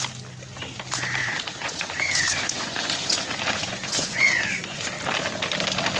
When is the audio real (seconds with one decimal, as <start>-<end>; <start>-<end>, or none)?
0.0-1.2; 4.8-6.0